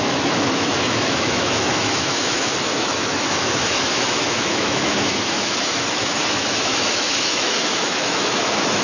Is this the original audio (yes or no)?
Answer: no